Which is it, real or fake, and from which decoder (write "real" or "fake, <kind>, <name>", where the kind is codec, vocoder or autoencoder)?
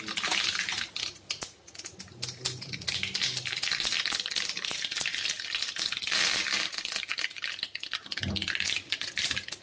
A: real